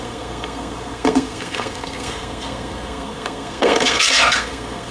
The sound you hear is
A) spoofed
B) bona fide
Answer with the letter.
A